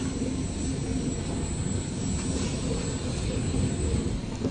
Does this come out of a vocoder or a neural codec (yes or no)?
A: no